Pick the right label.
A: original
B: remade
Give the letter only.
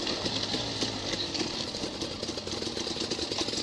A